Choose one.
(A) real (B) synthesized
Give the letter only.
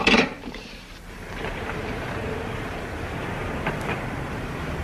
B